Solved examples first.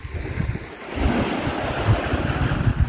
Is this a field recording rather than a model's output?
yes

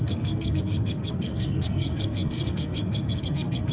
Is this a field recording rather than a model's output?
no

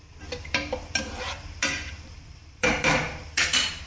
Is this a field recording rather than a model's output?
no